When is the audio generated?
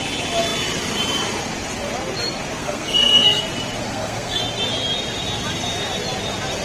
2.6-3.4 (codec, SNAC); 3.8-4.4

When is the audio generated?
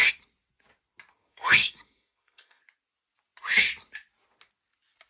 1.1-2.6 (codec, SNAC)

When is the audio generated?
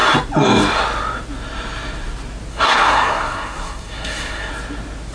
2.5-4.5 (codec, SNAC)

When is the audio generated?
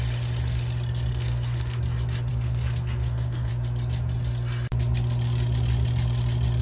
1.1-1.8 (codec, SNAC); 2.3-3.5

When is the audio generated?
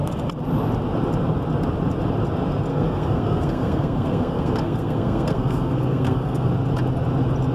2.7-6.5 (codec, SNAC)